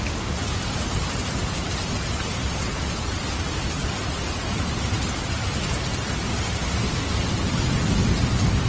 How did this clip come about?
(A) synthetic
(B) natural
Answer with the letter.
B